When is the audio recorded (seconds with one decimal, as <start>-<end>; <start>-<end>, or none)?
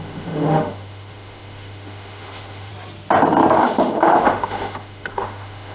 2.7-3.6